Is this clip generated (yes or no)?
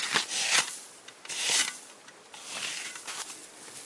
no